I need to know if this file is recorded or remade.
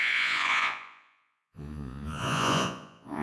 remade